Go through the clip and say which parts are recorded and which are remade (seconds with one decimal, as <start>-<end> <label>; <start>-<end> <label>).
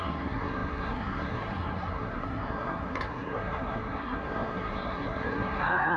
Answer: 0.0-6.0 remade